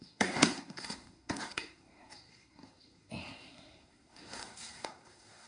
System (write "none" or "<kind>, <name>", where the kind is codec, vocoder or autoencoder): codec, SNAC